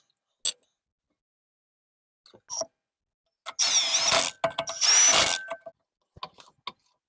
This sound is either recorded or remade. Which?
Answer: recorded